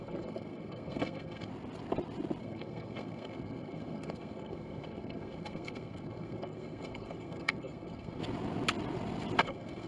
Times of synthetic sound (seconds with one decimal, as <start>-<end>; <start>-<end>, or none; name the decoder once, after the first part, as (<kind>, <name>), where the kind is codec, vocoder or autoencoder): 0.0-1.5 (codec, SNAC); 2.4-8.2; 9.4-9.9